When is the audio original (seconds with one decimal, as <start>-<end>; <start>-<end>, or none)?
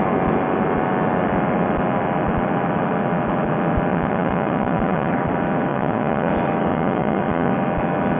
0.0-3.9; 5.1-5.7; 6.3-6.7; 7.5-8.2